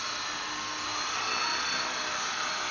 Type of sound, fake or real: real